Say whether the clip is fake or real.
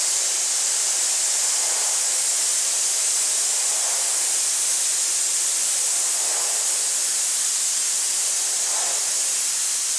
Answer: real